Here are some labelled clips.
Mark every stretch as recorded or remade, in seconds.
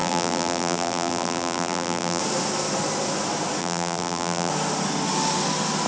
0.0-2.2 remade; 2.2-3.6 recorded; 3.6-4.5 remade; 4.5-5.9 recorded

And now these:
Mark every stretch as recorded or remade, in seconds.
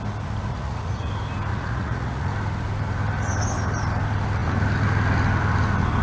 0.0-0.5 recorded; 0.5-1.1 remade; 1.1-1.5 recorded; 1.5-2.3 remade; 2.3-6.0 recorded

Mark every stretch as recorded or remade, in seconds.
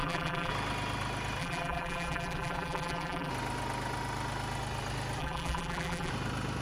0.0-0.5 remade; 0.5-1.4 recorded; 1.4-3.3 remade; 3.3-5.2 recorded; 5.2-6.1 remade; 6.1-6.6 recorded